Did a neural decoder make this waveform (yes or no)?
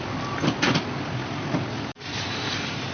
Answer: no